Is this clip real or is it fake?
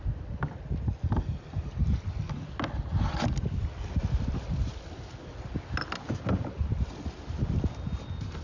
real